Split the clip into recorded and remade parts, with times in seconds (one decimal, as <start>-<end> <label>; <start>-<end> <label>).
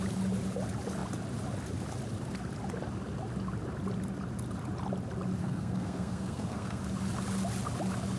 0.0-5.4 recorded; 5.4-6.8 remade; 6.8-8.2 recorded